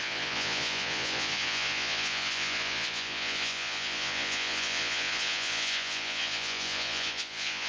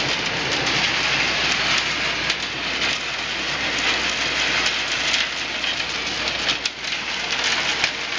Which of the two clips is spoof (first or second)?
first